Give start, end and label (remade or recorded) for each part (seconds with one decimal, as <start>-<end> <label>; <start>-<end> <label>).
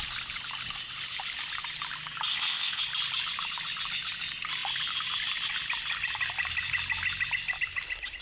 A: 0.0-2.3 recorded; 2.3-2.8 remade; 2.8-8.2 recorded